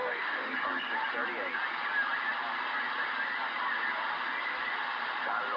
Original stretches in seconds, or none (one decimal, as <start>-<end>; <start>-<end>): 0.5-5.6